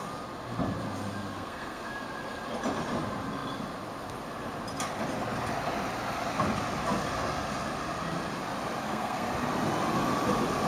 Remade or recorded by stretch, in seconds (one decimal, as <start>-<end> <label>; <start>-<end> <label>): 0.0-1.3 recorded; 1.3-1.9 remade; 1.9-8.8 recorded; 8.8-9.3 remade; 9.3-10.7 recorded